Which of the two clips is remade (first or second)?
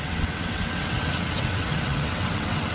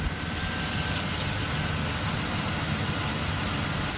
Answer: first